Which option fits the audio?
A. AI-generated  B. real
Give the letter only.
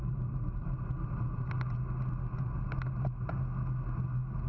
B